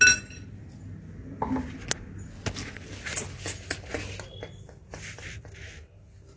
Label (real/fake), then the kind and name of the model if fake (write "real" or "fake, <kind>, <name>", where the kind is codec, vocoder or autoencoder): real